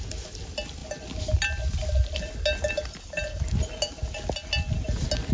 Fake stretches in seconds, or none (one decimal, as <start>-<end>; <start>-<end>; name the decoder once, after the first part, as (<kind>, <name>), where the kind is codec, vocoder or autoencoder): none